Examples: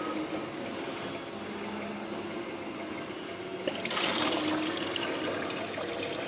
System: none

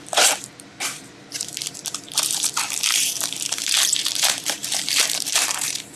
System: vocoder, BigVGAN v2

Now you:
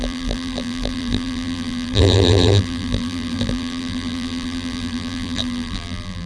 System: vocoder, BigVGAN v2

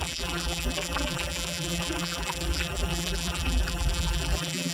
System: vocoder, BigVGAN v2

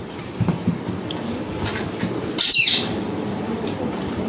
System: vocoder, BigVGAN v2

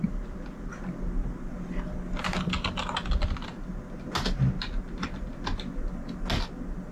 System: none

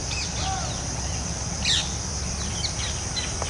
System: vocoder, BigVGAN v2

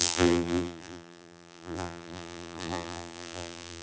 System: vocoder, BigVGAN v2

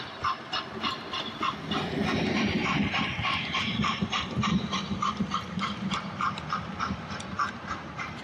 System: vocoder, BigVGAN v2